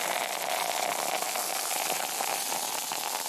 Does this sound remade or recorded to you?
recorded